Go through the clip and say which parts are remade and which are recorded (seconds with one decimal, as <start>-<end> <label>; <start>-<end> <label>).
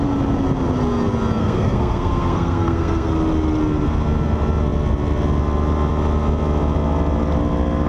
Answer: 0.0-1.4 recorded; 1.4-3.1 remade; 3.1-7.9 recorded